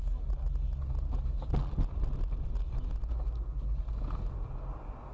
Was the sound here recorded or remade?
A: recorded